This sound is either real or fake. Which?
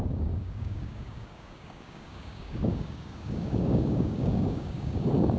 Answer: fake